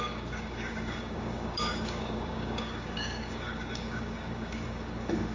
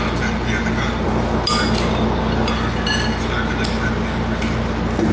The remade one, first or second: first